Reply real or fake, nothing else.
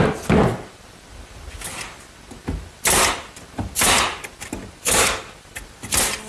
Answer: real